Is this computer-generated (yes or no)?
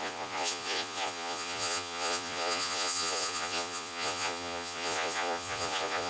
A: yes